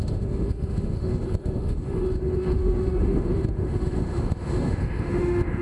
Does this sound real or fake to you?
fake